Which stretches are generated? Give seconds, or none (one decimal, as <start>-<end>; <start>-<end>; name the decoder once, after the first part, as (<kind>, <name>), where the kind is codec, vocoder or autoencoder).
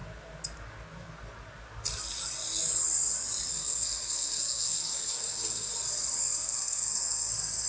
3.5-5.7 (codec, SNAC); 6.2-7.3